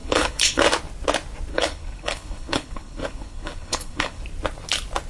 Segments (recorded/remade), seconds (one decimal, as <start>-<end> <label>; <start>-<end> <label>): 0.0-0.6 remade; 0.6-1.5 recorded; 1.5-4.2 remade; 4.2-5.1 recorded